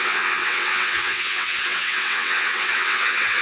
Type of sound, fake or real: fake